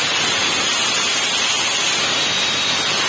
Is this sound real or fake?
real